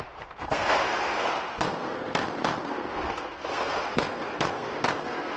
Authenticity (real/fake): fake